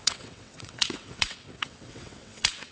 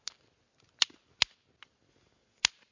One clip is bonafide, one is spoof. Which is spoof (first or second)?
first